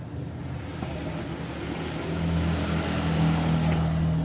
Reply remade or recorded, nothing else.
recorded